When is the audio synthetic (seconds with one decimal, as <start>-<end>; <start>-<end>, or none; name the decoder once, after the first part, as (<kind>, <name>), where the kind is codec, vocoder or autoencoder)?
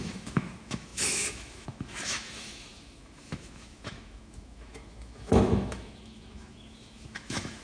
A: 0.0-7.6 (autoencoder, DAC-VAE)